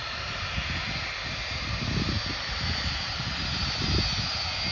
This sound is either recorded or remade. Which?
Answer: recorded